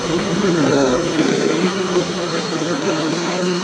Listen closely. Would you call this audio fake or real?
fake